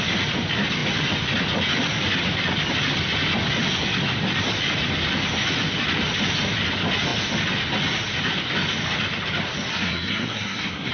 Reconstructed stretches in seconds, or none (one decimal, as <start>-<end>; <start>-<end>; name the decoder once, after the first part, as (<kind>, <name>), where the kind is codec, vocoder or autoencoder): 9.7-10.9 (codec, SNAC)